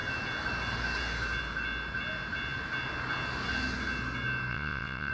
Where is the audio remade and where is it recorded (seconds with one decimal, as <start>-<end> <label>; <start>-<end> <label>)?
0.0-4.5 recorded; 4.5-5.1 remade